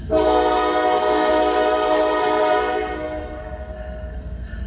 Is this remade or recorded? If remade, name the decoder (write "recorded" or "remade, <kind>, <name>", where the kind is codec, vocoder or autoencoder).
remade, codec, SNAC